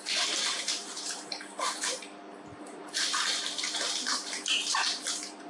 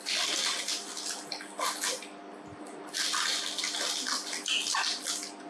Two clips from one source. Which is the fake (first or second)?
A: first